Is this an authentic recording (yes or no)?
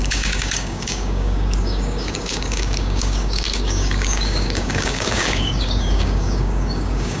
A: no